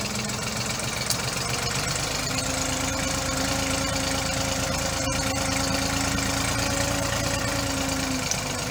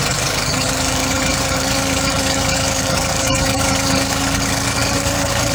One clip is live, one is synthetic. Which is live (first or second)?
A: first